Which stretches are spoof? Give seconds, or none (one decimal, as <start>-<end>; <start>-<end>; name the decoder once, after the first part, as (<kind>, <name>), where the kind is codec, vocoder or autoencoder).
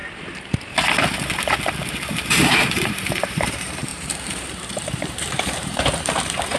2.1-6.6 (vocoder, BigVGAN v2)